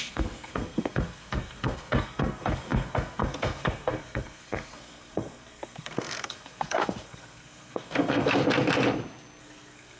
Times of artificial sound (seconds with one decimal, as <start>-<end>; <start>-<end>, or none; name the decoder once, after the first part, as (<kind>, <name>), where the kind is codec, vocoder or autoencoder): 0.0-8.4 (codec, SNAC); 9.4-10.0